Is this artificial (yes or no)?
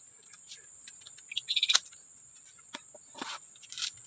no